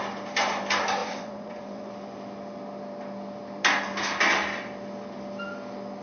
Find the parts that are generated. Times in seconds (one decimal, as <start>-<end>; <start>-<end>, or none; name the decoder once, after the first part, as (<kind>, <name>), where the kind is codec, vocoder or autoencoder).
1.0-1.9 (vocoder, Vocos)

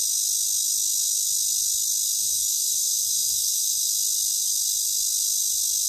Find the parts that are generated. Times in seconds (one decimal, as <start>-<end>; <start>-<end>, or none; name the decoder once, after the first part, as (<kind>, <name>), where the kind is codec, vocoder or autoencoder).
2.2-3.9 (autoencoder, DAC-VAE)

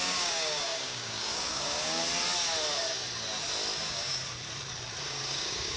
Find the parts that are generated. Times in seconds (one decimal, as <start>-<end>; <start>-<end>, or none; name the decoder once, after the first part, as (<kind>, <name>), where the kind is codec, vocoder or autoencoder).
0.0-2.0 (codec, DAC); 3.8-4.2; 5.0-5.8

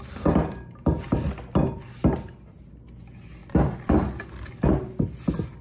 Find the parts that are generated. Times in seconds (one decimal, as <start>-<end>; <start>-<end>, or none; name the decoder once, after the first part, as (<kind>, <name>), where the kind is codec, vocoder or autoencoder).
none

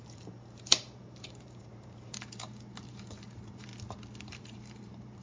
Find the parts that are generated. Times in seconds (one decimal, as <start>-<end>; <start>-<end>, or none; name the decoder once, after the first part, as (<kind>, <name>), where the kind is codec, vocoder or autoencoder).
0.0-3.7 (vocoder, BigVGAN v2); 4.2-5.2